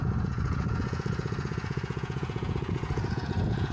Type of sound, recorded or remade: remade